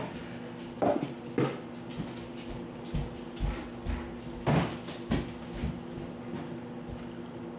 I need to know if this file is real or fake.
real